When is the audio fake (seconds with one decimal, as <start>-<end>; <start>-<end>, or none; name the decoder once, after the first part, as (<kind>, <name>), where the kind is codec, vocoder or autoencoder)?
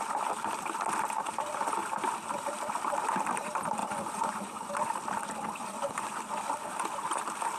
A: 3.8-4.7 (vocoder, Vocos); 5.6-6.2